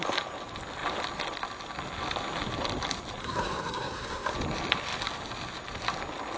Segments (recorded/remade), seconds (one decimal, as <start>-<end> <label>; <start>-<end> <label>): 0.0-3.2 recorded; 3.2-4.3 remade; 4.3-6.4 recorded